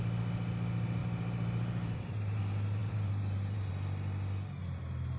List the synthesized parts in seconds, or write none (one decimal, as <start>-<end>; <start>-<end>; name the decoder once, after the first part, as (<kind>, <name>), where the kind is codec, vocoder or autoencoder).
1.0-2.4 (vocoder, BigVGAN v2); 2.8-3.7